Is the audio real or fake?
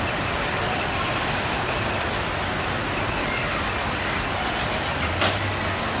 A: real